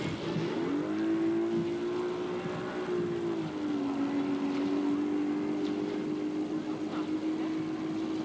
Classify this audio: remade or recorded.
recorded